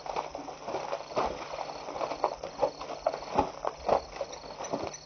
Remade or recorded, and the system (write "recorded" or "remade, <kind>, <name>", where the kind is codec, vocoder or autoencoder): recorded